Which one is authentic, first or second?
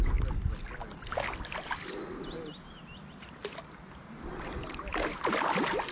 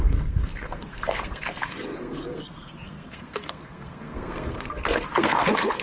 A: first